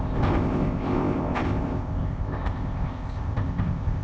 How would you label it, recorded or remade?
remade